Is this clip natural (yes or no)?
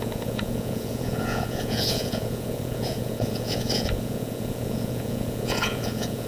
no